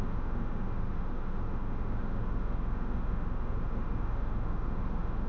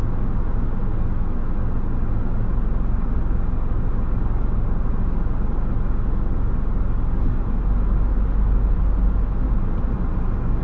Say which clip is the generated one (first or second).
first